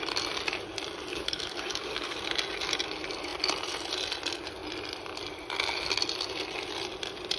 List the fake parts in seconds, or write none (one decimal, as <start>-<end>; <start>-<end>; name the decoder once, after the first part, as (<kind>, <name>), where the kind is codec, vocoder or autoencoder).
1.1-2.2 (codec, DAC)